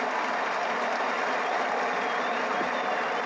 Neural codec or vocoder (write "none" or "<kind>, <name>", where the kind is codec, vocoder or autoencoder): none